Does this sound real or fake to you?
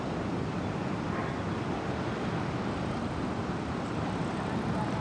real